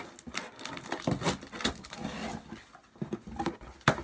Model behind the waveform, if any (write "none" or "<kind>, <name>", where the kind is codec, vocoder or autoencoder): none